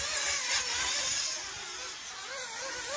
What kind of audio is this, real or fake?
real